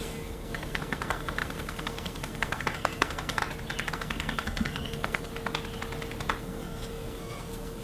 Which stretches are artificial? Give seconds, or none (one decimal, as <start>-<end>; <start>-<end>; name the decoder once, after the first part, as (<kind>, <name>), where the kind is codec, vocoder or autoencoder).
0.0-3.4 (codec, SNAC); 3.9-5.3; 6.4-7.8